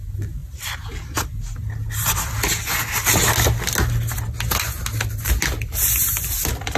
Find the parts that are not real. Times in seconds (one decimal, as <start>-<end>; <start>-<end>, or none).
none